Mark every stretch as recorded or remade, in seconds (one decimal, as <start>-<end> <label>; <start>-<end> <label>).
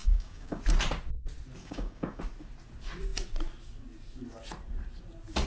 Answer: 0.0-0.6 remade; 0.6-1.6 recorded; 1.6-2.2 remade; 2.2-5.5 recorded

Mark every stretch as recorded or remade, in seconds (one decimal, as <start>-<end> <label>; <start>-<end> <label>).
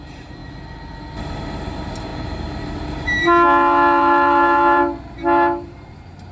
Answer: 0.0-0.4 remade; 0.4-1.2 recorded; 1.2-6.3 remade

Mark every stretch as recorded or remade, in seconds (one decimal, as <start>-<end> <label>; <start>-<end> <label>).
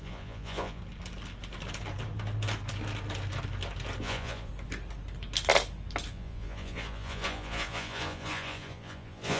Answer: 0.0-0.8 remade; 0.8-4.0 recorded; 4.0-4.5 remade; 4.5-6.1 recorded; 6.1-9.4 remade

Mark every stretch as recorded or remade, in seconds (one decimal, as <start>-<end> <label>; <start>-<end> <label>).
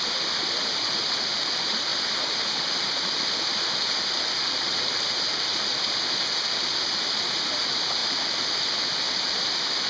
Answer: 0.0-9.9 recorded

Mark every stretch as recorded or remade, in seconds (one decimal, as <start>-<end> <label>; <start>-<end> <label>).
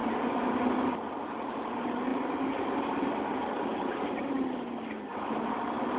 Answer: 0.0-6.0 recorded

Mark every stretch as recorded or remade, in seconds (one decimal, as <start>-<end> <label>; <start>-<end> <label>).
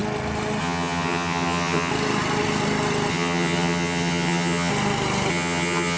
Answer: 0.0-0.6 recorded; 0.6-1.9 remade; 1.9-3.1 recorded; 3.1-4.7 remade; 4.7-5.3 recorded; 5.3-6.0 remade